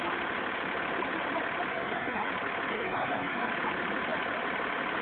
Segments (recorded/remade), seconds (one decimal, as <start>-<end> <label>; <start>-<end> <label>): 0.0-1.7 recorded; 1.7-2.3 remade; 2.3-2.7 recorded; 2.7-3.5 remade; 3.5-5.0 recorded